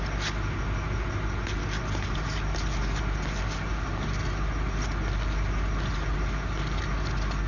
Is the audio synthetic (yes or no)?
no